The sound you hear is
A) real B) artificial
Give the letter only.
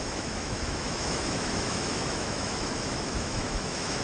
B